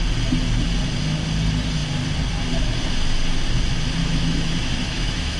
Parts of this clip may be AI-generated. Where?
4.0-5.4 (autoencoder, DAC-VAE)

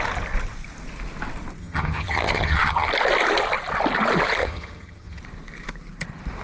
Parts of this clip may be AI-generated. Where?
1.6-2.9 (vocoder, HiFi-GAN); 4.4-5.2